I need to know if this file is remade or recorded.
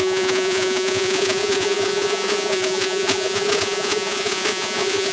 remade